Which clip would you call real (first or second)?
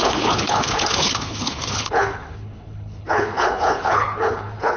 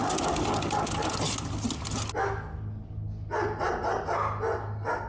second